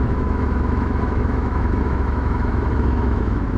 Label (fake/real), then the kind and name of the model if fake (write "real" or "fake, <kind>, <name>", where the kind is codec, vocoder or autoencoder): fake, autoencoder, DAC-VAE